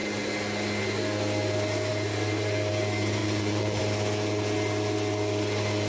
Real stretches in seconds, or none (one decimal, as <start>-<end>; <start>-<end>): 0.0-3.2; 3.8-5.9